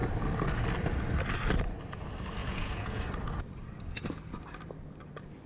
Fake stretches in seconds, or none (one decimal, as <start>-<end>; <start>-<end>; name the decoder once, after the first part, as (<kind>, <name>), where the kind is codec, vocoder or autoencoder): 2.4-3.0 (vocoder, Vocos)